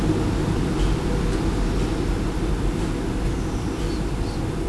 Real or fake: real